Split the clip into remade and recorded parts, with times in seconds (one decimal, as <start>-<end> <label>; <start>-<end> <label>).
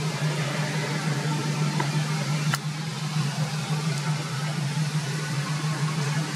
0.0-1.4 recorded; 1.4-1.9 remade; 1.9-6.4 recorded